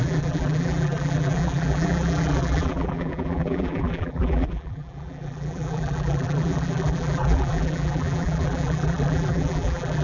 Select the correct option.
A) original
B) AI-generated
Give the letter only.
B